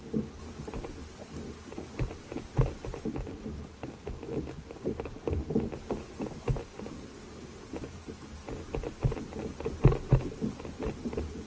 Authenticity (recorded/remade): recorded